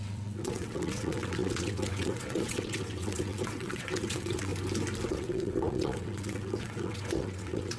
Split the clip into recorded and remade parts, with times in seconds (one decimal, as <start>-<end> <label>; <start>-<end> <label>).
0.0-4.5 remade; 4.5-5.1 recorded; 5.1-7.8 remade